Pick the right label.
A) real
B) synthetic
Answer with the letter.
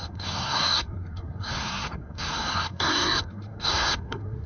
B